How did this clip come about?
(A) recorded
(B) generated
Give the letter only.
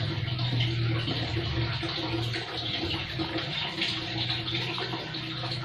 A